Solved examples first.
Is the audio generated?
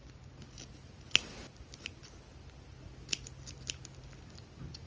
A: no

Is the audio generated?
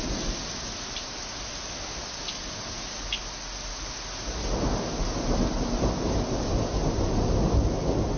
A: no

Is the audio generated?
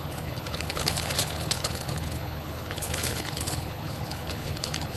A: yes